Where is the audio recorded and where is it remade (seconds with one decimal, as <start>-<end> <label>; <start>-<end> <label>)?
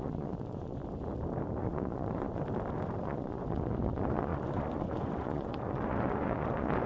0.0-0.8 remade; 0.8-1.6 recorded; 1.6-2.4 remade; 2.4-3.0 recorded; 3.0-6.9 remade